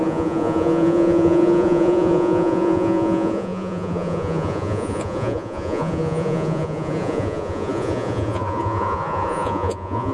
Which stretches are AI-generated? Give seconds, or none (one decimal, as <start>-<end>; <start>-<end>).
0.0-10.1

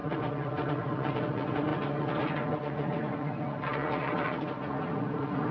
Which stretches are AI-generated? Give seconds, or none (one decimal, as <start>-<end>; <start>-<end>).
0.0-5.5

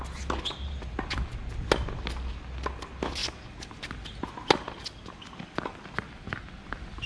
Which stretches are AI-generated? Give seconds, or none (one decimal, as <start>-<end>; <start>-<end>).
none

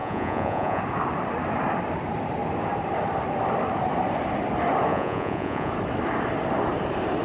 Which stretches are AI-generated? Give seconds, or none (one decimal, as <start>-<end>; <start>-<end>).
0.0-0.8; 4.9-5.7

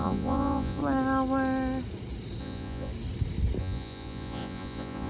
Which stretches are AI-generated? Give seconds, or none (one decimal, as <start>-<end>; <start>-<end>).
0.0-0.8; 2.4-2.9; 3.6-5.1